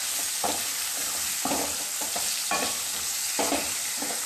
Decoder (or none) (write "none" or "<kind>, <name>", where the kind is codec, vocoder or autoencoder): vocoder, BigVGAN v2